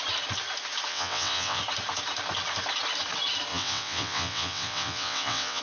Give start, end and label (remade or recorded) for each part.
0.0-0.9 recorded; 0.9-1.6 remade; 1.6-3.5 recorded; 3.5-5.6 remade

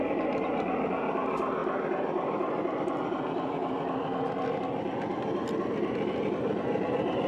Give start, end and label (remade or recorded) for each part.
0.0-7.3 recorded